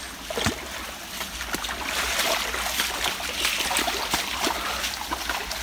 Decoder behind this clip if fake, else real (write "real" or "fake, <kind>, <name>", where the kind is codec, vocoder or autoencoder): real